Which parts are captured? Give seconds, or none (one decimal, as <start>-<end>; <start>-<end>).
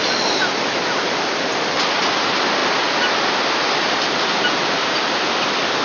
0.0-5.8